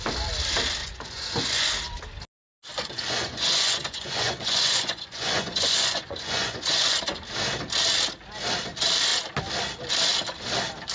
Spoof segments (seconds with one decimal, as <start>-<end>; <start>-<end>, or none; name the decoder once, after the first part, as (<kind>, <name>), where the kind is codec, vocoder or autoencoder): 0.8-1.7 (vocoder, Vocos); 2.7-7.0